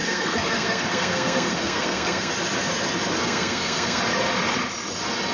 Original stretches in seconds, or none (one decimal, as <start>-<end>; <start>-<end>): 2.3-3.2; 4.0-5.3